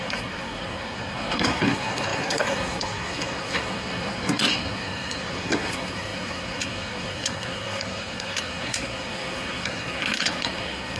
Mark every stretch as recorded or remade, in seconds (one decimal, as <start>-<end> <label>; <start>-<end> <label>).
0.0-11.0 remade